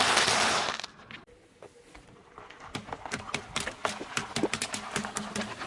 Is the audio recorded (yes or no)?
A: yes